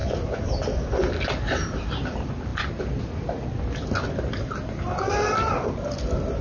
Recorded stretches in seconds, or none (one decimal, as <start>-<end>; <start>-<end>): 0.0-6.4